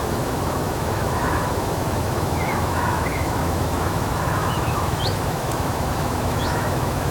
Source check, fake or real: fake